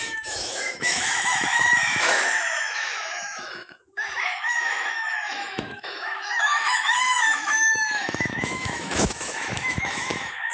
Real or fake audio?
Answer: fake